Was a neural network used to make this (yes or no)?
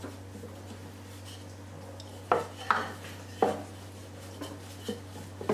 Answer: no